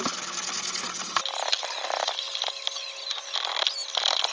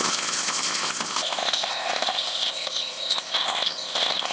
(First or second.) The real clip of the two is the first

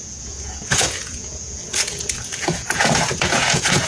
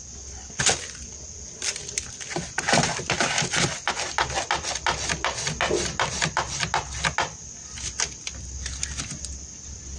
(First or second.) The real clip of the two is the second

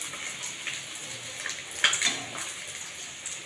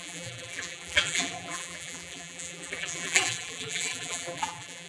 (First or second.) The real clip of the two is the first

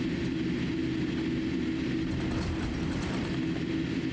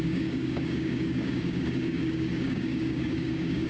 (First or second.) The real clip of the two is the first